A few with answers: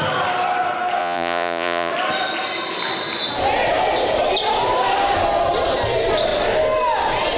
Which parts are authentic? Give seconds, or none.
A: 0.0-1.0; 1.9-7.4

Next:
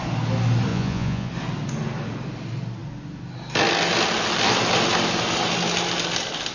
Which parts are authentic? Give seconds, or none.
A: 0.0-0.7; 1.3-6.5

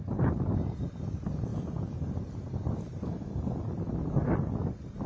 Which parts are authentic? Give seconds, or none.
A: 0.0-5.1

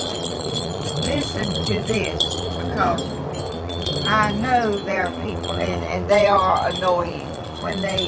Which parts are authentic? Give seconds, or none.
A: 2.7-3.5; 3.9-4.9; 6.4-7.0